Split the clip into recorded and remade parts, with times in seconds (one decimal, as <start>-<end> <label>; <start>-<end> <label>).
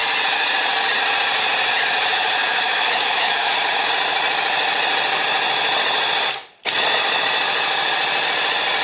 0.0-2.4 recorded; 2.4-3.9 remade; 3.9-8.8 recorded